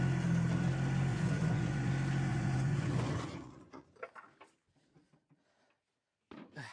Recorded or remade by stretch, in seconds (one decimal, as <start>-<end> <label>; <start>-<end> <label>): 0.0-1.1 recorded; 1.1-1.9 remade; 1.9-2.3 recorded; 2.3-3.9 remade; 3.9-6.7 recorded